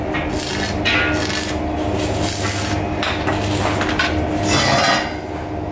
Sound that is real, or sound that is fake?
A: real